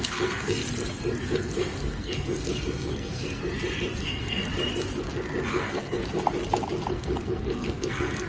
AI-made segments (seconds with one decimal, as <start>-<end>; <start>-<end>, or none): 0.0-0.6; 1.2-3.4; 4.0-4.5; 5.5-6.0; 6.9-8.3